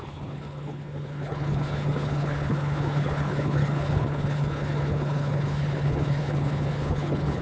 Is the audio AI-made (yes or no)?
yes